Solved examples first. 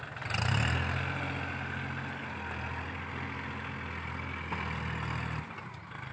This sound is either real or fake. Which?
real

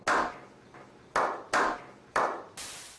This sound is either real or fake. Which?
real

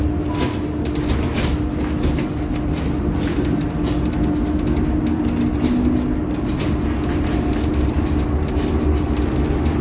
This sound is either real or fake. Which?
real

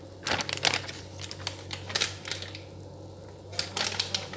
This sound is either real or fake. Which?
real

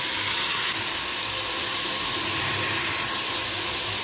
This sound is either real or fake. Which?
real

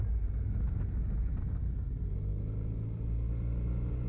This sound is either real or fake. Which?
real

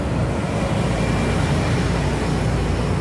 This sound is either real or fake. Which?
real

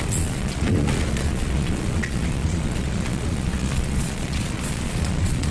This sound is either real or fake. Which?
fake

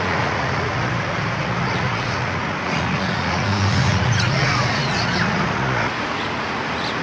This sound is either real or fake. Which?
fake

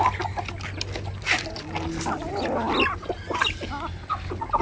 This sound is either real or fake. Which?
real